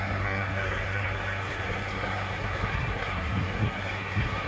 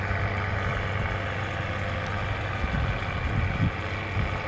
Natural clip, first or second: second